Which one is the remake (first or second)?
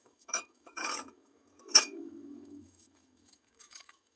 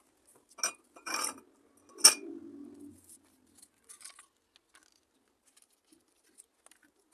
first